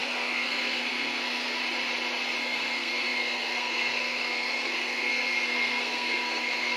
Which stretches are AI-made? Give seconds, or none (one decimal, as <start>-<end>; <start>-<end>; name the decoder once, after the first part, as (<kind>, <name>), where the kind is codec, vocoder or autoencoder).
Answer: 0.0-1.6 (codec, SNAC); 2.4-6.8